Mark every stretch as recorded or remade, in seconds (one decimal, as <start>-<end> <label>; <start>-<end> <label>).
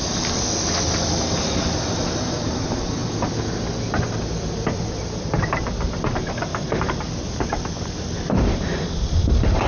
0.0-9.7 recorded